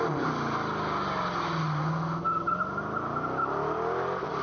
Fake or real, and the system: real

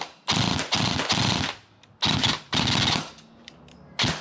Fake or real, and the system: real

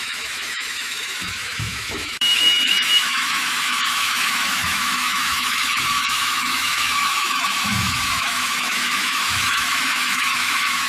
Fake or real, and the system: fake, autoencoder, DAC-VAE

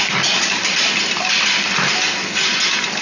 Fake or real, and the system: real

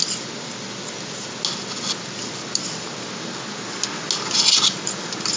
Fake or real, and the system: real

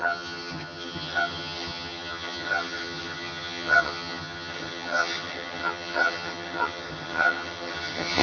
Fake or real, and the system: fake, vocoder, HiFi-GAN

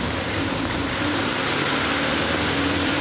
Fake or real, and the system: fake, vocoder, BigVGAN v2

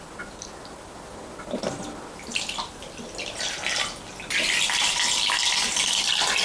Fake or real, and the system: real